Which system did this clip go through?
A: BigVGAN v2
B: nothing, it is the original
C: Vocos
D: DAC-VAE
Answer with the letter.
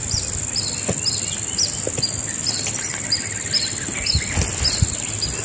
B